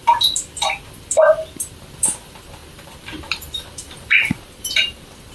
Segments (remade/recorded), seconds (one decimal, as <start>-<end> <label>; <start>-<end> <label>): 0.0-1.7 recorded; 1.7-5.3 remade